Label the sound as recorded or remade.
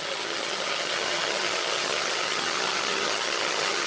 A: remade